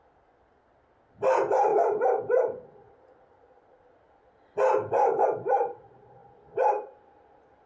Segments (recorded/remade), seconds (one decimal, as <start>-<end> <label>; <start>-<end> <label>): 0.0-7.7 recorded

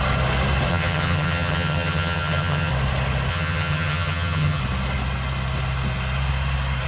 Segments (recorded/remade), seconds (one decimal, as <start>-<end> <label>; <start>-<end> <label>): 0.0-0.7 recorded; 0.7-2.7 remade; 2.7-3.3 recorded; 3.3-4.6 remade; 4.6-6.9 recorded

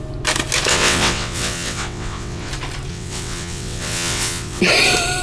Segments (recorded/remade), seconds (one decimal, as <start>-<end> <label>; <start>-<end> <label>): 0.0-0.7 recorded; 0.7-2.5 remade; 2.5-2.9 recorded; 2.9-4.6 remade; 4.6-5.2 recorded

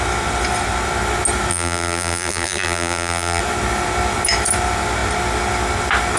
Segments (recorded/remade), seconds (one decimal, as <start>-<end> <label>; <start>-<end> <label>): 0.0-1.5 recorded; 1.5-3.4 remade; 3.4-6.2 recorded

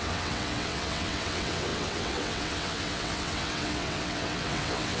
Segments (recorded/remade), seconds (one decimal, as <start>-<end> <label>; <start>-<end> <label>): 0.0-5.0 remade

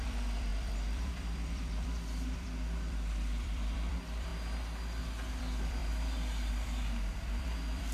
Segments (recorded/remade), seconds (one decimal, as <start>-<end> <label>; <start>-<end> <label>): 0.0-4.3 remade; 4.3-5.3 recorded; 5.3-5.8 remade; 5.8-6.5 recorded; 6.5-7.9 remade

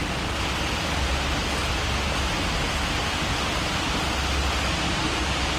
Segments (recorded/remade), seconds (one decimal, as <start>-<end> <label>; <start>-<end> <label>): 0.0-5.6 recorded

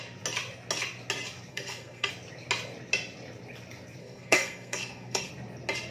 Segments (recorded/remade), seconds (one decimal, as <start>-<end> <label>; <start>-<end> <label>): 0.0-1.5 recorded; 1.5-2.1 remade; 2.1-4.0 recorded; 4.0-5.3 remade; 5.3-5.9 recorded